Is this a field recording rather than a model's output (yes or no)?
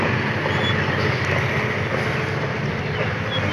yes